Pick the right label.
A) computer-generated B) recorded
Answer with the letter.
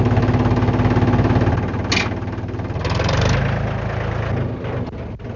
B